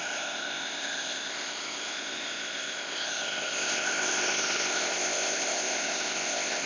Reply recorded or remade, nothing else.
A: remade